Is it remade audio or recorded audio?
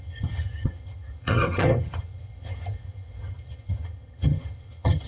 remade